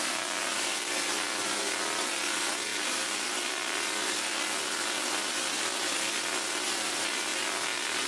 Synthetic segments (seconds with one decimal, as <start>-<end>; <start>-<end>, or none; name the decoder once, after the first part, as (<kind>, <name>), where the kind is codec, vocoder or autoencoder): none